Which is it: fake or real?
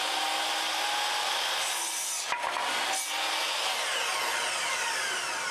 real